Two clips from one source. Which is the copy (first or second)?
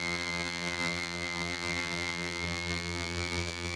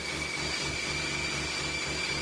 first